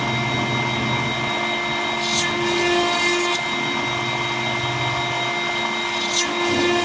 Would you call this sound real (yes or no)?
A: yes